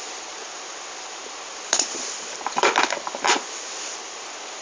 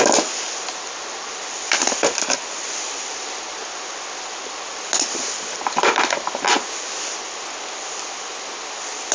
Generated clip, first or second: first